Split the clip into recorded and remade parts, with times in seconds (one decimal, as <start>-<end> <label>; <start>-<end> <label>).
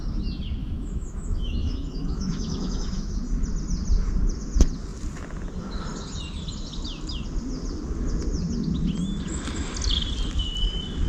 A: 0.0-0.6 recorded; 0.6-3.2 remade; 3.2-11.1 recorded